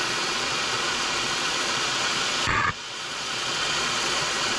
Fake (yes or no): yes